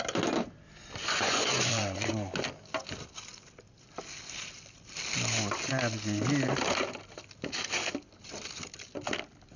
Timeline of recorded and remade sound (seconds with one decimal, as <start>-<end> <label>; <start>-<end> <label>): 0.0-1.1 recorded; 1.1-2.1 remade; 2.1-9.6 recorded